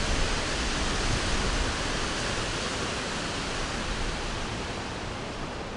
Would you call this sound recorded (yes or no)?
yes